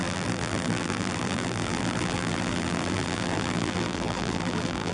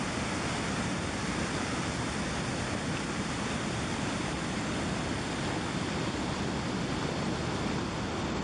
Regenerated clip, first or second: first